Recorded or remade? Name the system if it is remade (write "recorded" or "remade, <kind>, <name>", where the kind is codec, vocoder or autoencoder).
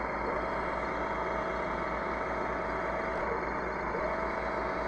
recorded